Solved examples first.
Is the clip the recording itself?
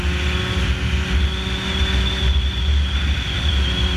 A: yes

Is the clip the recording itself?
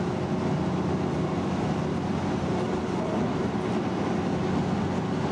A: yes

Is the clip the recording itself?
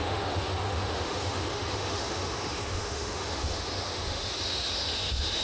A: no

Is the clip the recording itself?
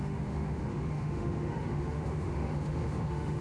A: no